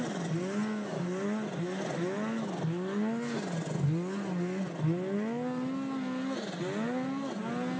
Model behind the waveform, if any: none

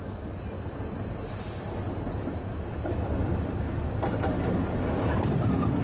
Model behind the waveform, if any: none